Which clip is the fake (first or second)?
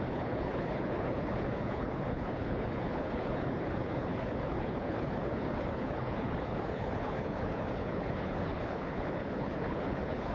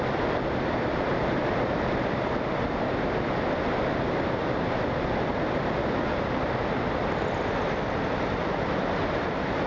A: first